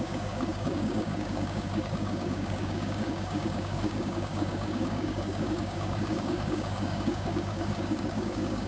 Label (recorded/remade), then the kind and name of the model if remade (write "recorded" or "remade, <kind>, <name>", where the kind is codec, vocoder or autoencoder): remade, codec, DAC